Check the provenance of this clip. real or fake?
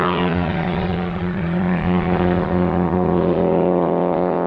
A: fake